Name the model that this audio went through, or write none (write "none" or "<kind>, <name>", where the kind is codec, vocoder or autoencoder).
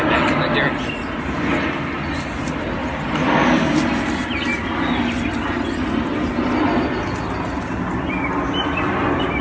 none